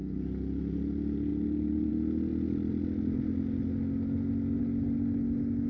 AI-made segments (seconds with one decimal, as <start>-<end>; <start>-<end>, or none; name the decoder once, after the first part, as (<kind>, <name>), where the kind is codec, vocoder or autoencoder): none